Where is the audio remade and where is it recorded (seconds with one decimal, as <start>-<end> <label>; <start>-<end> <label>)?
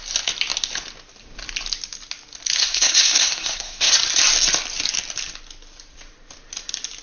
0.0-2.6 recorded; 2.6-3.9 remade; 3.9-7.0 recorded